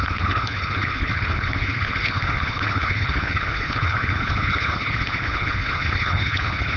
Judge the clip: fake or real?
fake